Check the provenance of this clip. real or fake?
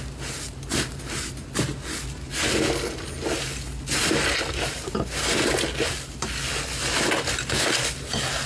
real